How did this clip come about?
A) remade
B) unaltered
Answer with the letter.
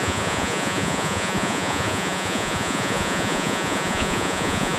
A